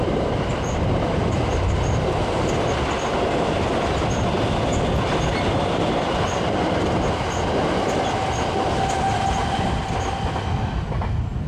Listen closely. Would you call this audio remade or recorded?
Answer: recorded